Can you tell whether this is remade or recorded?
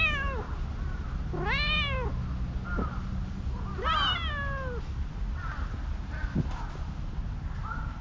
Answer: recorded